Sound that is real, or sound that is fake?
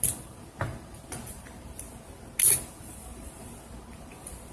real